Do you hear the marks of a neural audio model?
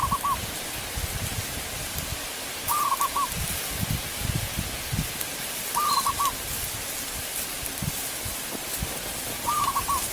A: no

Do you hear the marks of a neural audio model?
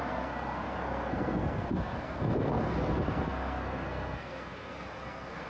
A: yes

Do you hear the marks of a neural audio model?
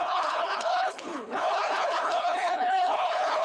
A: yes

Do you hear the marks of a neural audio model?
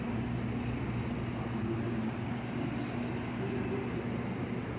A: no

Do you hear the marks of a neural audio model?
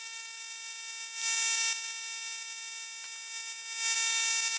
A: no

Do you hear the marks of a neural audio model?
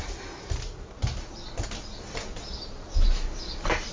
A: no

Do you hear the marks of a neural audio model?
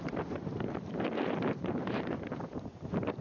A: yes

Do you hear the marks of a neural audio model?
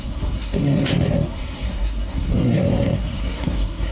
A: yes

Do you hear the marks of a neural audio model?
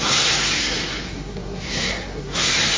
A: yes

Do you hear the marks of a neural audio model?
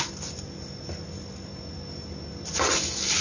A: no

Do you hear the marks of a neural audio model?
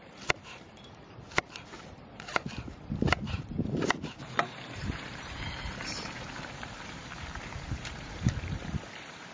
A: yes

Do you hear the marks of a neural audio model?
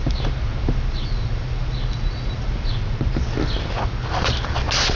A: no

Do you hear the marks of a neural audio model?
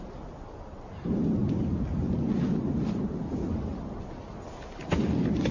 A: no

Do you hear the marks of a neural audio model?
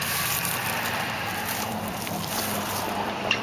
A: yes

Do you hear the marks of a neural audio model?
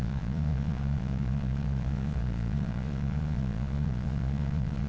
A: yes